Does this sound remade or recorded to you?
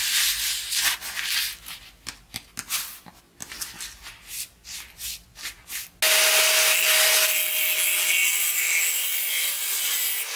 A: recorded